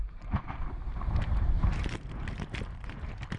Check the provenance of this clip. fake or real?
fake